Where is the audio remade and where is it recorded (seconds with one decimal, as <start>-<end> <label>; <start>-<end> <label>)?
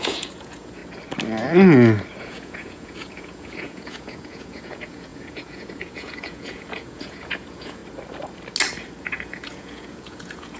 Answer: 0.0-0.8 remade; 0.8-2.2 recorded; 2.2-7.8 remade; 7.8-9.0 recorded; 9.0-10.6 remade